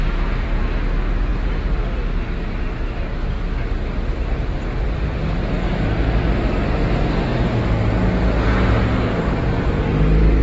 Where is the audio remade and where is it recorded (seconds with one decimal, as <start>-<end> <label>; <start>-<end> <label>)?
0.0-10.4 recorded